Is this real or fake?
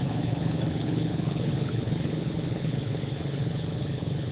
fake